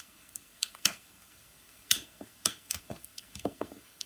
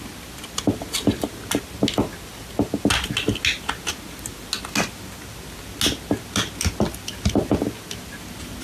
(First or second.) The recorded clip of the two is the second